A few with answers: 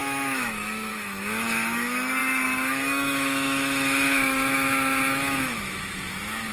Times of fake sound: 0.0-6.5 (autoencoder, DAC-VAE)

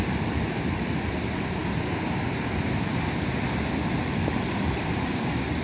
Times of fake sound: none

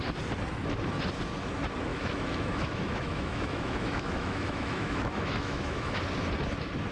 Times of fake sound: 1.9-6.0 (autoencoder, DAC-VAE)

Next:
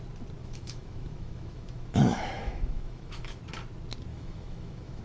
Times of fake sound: 0.4-3.4 (autoencoder, DAC-VAE); 4.1-5.0

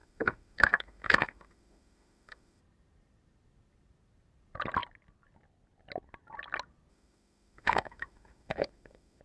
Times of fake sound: 0.0-2.6 (autoencoder, DAC-VAE); 6.9-9.2

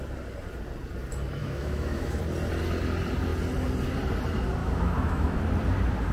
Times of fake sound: 1.4-2.2 (autoencoder, DAC-VAE); 4.6-5.4